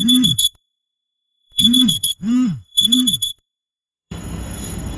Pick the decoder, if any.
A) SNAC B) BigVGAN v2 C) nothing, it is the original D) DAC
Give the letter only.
A